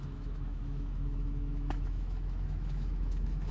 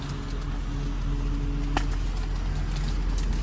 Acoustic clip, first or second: second